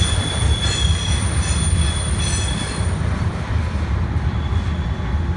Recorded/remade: recorded